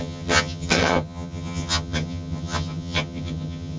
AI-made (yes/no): yes